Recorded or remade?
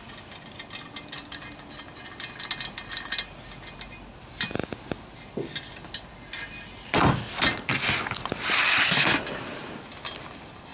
recorded